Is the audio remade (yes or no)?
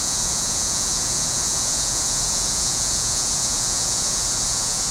yes